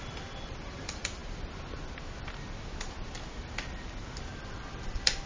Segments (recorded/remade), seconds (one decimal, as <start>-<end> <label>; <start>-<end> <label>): 0.0-1.2 remade; 1.2-4.4 recorded; 4.4-5.3 remade